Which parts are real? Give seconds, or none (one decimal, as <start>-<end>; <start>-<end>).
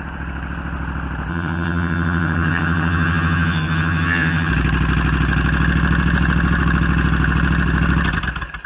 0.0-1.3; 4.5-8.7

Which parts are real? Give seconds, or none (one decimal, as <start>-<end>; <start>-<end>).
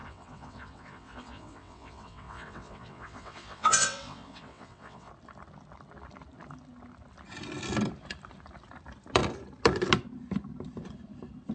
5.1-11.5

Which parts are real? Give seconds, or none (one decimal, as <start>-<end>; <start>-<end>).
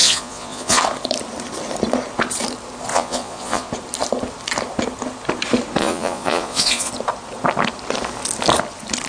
0.8-2.9; 3.7-5.8; 6.9-9.1